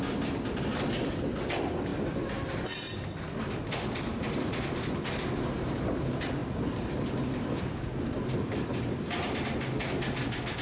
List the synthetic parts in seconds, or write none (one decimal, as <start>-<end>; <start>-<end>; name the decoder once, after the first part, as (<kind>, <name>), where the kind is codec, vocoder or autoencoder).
none